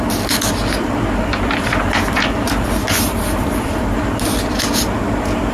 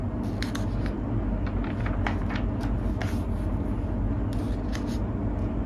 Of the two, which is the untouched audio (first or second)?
second